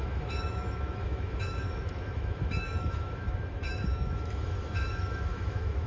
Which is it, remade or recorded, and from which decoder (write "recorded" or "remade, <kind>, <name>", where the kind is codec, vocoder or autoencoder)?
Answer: remade, autoencoder, DAC-VAE